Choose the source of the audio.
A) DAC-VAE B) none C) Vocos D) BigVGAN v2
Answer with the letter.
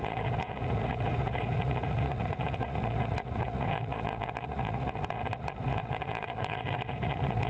C